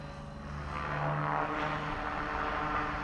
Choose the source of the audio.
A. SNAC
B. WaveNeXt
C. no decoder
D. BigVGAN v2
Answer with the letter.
C